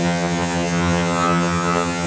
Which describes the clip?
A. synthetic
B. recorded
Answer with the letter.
A